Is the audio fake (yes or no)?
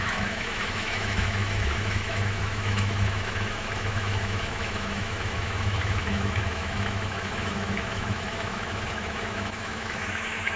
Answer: yes